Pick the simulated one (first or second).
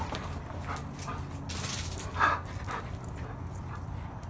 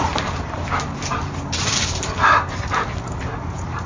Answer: second